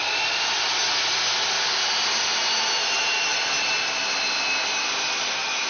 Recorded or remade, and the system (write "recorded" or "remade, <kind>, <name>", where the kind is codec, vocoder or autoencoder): recorded